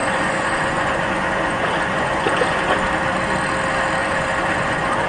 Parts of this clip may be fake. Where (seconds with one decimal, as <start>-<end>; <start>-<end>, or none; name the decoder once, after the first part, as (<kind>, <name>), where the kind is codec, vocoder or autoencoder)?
0.0-2.6 (vocoder, Vocos); 4.0-5.1